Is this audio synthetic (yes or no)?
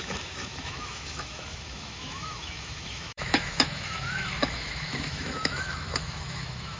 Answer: yes